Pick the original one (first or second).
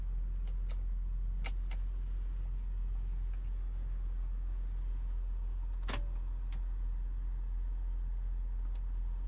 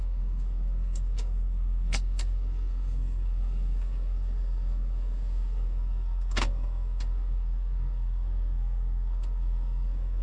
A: first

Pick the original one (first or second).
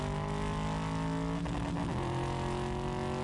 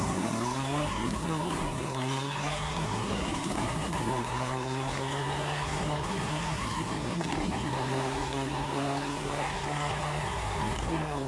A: first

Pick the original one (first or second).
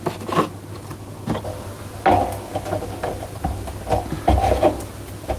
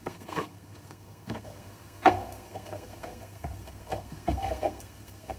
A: first